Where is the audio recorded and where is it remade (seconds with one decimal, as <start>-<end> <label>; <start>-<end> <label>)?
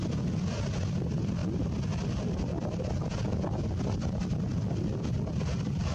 0.0-5.9 recorded